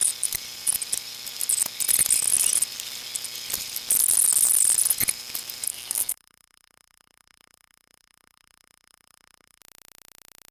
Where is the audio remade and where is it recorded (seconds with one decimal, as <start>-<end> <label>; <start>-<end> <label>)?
0.0-5.7 recorded; 5.7-9.6 remade; 9.6-10.5 recorded